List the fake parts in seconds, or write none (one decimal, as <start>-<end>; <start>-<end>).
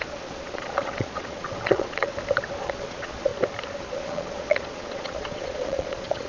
0.0-2.1; 2.6-3.3; 3.8-6.3